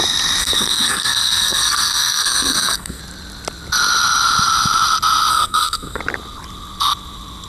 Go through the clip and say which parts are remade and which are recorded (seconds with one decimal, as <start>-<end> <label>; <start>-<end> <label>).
0.0-0.4 recorded; 0.4-3.0 remade; 3.0-5.3 recorded; 5.3-6.0 remade; 6.0-7.5 recorded